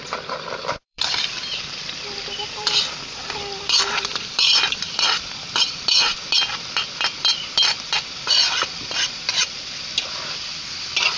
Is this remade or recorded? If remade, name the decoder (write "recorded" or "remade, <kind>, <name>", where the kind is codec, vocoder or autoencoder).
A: remade, vocoder, BigVGAN v2